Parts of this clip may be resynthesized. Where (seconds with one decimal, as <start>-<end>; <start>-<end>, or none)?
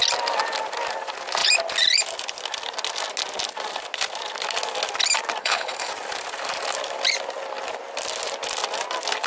5.4-5.9